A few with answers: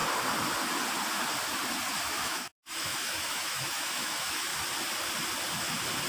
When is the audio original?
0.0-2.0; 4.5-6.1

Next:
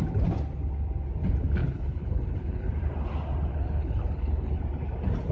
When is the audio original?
0.0-1.6; 2.7-3.5; 4.6-5.3

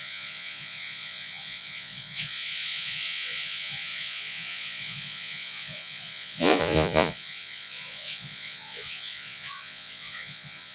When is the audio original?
none